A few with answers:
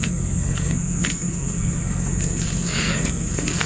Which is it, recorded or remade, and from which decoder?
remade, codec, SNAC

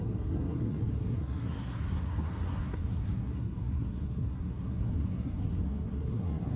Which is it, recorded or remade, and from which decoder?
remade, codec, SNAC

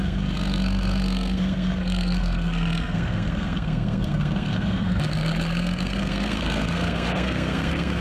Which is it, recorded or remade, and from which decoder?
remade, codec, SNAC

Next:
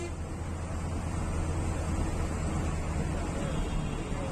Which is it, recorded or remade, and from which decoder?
recorded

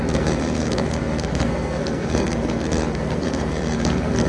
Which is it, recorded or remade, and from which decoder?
remade, codec, SNAC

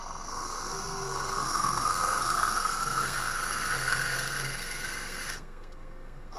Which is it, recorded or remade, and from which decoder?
remade, codec, SNAC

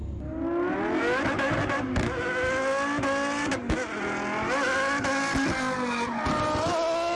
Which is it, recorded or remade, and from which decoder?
recorded